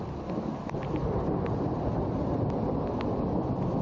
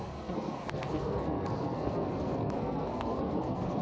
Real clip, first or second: first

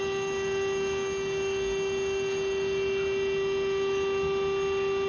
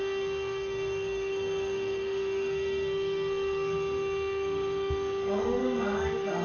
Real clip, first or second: first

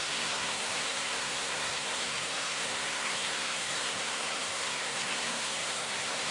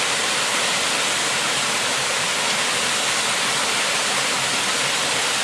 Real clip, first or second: second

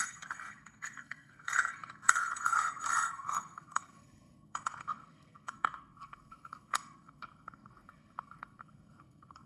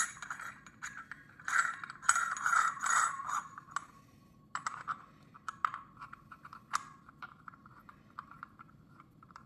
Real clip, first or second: second